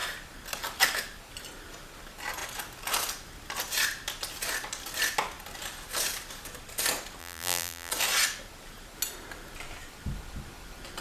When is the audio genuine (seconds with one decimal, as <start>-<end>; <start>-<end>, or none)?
0.0-7.2; 7.9-11.0